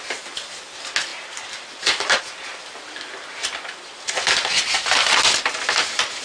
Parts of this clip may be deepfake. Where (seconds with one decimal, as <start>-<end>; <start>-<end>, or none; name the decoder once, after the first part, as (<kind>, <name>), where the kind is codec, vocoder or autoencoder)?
none